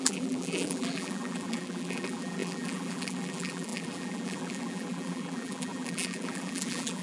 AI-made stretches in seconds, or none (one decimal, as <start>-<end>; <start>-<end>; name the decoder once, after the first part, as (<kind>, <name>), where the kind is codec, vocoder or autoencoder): 0.0-7.0 (vocoder, BigVGAN v2)